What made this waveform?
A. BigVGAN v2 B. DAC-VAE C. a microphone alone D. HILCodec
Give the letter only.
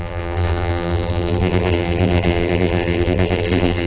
A